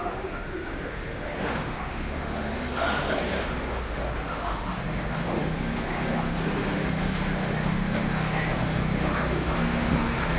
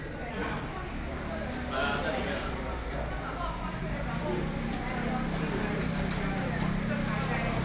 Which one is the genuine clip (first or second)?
second